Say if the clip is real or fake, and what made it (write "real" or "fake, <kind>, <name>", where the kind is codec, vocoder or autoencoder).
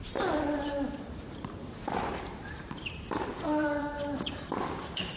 fake, vocoder, BigVGAN v2